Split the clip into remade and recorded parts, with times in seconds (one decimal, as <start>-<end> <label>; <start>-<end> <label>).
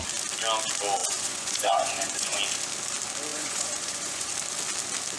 0.0-1.0 recorded; 1.0-2.4 remade; 2.4-3.3 recorded; 3.3-4.3 remade; 4.3-5.2 recorded